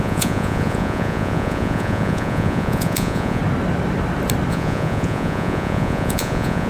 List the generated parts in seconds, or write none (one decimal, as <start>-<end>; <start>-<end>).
0.0-3.4; 4.5-6.7